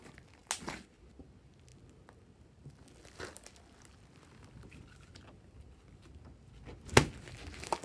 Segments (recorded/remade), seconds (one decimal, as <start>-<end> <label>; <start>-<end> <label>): 0.0-7.8 recorded